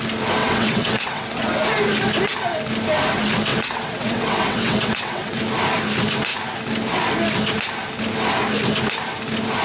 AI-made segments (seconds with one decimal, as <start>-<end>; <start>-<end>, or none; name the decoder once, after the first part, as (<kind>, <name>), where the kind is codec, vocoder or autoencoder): 0.4-1.4 (vocoder, WaveNeXt); 3.5-5.4